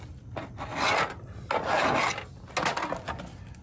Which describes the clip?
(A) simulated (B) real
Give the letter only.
B